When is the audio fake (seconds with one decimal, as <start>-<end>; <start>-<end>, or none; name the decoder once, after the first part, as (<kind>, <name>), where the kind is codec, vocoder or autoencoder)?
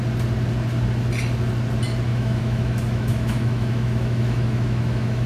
2.1-5.3 (autoencoder, DAC-VAE)